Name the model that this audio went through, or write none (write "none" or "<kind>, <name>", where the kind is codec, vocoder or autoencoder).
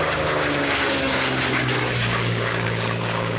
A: codec, DAC